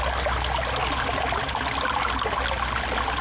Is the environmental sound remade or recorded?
recorded